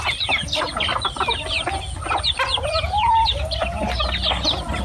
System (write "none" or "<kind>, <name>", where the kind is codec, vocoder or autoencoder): none